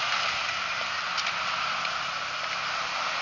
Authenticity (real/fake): real